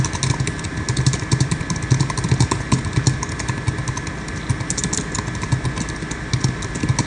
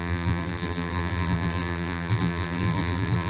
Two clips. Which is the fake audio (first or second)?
second